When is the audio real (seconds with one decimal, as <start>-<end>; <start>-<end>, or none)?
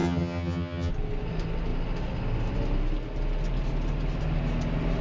0.9-5.0